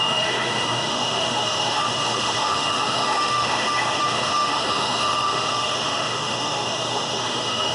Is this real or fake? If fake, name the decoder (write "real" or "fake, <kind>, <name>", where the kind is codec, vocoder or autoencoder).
fake, autoencoder, DAC-VAE